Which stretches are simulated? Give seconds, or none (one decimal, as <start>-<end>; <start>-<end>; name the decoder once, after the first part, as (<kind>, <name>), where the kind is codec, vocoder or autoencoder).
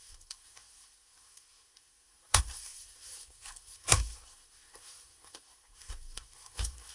0.0-6.9 (codec, SNAC)